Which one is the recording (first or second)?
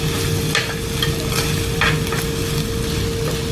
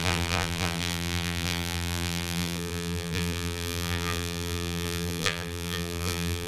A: first